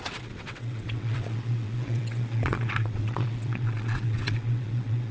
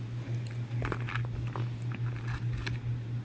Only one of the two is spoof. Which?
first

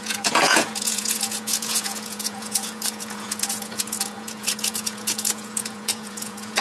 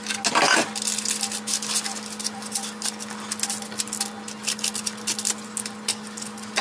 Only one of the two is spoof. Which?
first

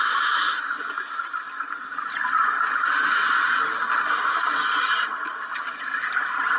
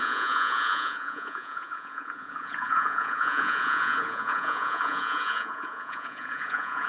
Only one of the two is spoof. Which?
second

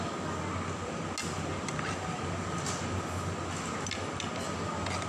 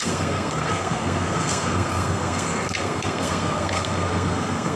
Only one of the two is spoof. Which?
second